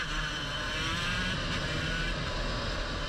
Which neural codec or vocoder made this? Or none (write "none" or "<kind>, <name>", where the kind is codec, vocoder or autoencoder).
none